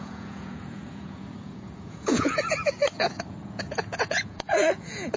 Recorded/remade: remade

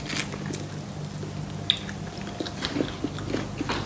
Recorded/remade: recorded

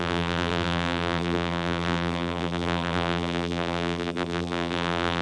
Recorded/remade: remade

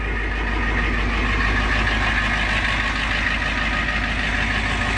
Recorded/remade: recorded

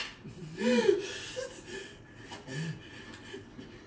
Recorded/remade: recorded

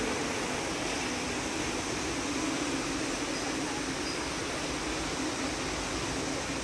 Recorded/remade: recorded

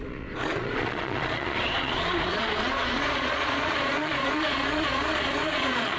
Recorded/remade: remade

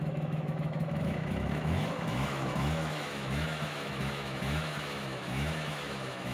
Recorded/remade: remade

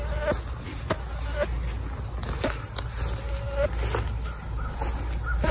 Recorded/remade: recorded